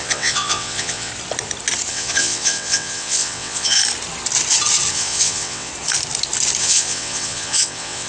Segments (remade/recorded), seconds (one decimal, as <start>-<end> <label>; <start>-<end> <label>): 0.0-1.1 remade; 1.1-1.9 recorded; 1.9-3.8 remade; 3.8-4.9 recorded; 4.9-5.7 remade; 5.7-6.6 recorded; 6.6-8.1 remade